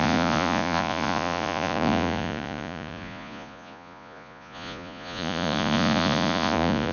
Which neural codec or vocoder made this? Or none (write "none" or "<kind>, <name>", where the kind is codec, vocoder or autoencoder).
vocoder, Vocos